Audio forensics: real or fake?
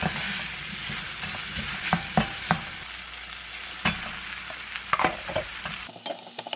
real